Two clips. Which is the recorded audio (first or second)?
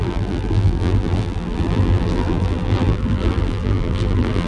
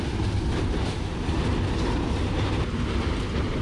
second